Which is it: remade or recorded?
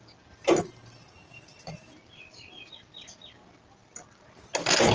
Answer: recorded